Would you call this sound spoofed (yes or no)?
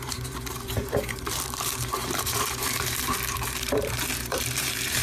yes